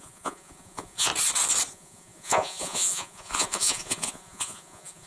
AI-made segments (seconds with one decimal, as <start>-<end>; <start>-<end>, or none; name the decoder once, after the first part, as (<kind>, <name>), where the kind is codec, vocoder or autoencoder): 0.0-1.1 (vocoder, Vocos); 1.7-5.1